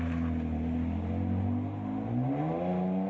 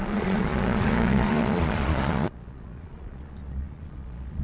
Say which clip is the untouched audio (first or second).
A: first